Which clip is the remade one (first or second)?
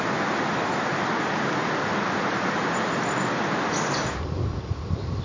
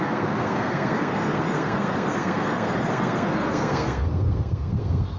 second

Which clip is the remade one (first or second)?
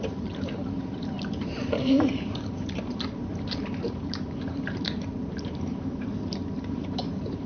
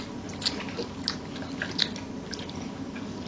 first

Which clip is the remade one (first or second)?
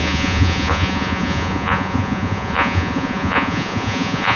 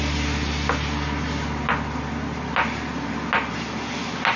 first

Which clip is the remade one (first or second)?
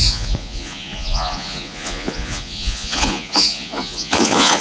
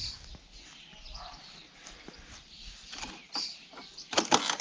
first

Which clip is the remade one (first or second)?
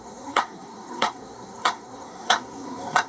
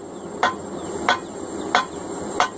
first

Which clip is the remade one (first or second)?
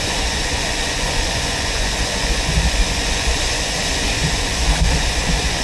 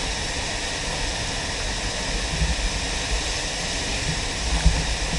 first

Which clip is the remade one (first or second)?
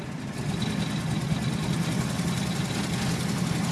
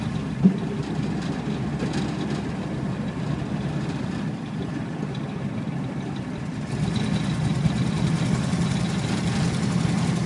second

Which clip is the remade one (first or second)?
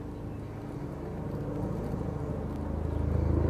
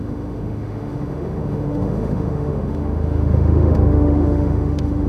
second